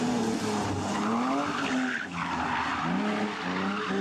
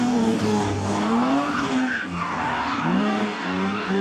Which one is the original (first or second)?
first